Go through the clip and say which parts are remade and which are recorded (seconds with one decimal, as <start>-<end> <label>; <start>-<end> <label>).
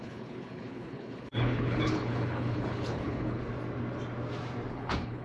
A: 0.0-3.4 remade; 3.4-4.7 recorded; 4.7-5.2 remade